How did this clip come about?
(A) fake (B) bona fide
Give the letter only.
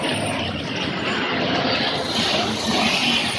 B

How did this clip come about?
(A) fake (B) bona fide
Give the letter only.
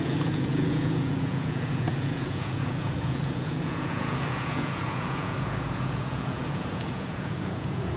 A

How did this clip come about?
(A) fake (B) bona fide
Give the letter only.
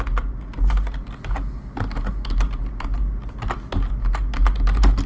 B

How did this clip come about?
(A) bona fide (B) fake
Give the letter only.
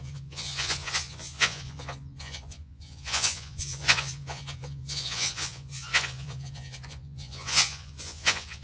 B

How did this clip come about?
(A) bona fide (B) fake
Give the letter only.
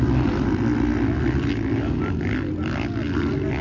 A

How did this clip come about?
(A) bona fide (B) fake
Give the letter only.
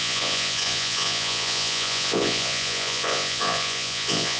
B